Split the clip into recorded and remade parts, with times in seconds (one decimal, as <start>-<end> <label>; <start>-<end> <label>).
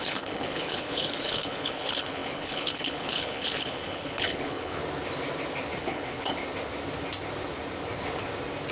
0.0-4.8 remade; 4.8-5.8 recorded; 5.8-6.4 remade; 6.4-8.7 recorded